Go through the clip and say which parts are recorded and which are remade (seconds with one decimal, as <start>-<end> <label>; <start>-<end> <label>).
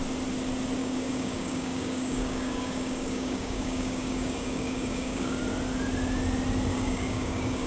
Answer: 0.0-0.8 recorded; 0.8-5.4 remade; 5.4-6.7 recorded; 6.7-7.7 remade